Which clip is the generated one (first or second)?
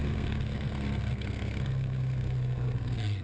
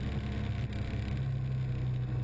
first